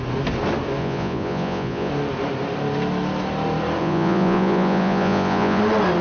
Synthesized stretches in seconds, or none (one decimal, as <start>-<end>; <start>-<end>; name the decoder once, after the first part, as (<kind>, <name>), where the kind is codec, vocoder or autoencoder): 0.8-1.9 (vocoder, Vocos); 3.8-5.6